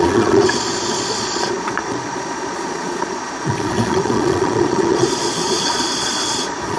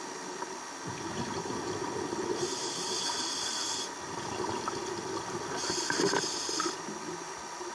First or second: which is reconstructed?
first